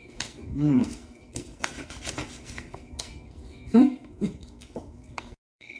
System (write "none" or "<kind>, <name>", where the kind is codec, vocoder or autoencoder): codec, SNAC